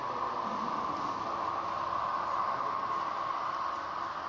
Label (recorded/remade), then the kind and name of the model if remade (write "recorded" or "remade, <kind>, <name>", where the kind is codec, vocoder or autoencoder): recorded